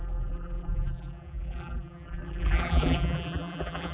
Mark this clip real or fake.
fake